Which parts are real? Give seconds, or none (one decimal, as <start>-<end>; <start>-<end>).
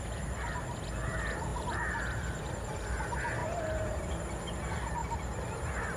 0.0-1.5; 2.5-3.4; 4.0-6.0